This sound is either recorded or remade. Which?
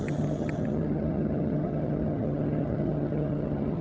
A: remade